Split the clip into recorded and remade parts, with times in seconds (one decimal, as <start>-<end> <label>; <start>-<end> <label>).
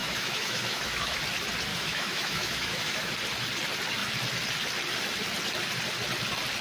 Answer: 0.0-1.2 remade; 1.2-1.7 recorded; 1.7-3.1 remade; 3.1-6.6 recorded